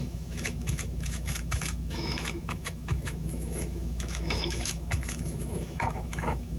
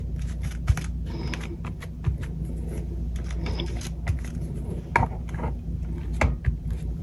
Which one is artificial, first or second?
first